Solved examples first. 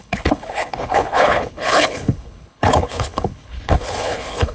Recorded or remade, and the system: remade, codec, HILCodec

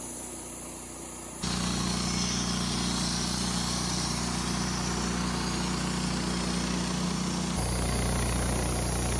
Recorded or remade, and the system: recorded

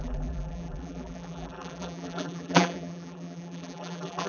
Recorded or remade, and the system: remade, vocoder, BigVGAN v2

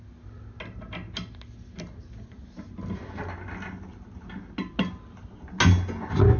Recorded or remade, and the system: recorded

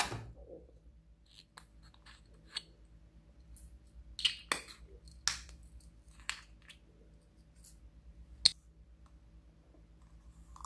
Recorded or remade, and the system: recorded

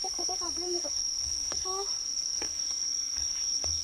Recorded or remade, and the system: remade, codec, SNAC